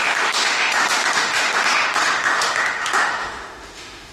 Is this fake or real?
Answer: fake